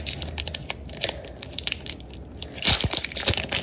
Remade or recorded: recorded